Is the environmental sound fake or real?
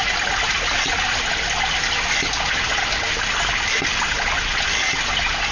real